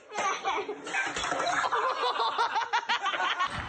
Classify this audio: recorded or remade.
recorded